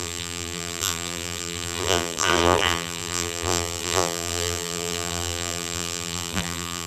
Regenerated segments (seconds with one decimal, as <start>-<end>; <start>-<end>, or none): 0.0-6.9